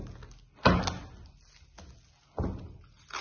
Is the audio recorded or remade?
recorded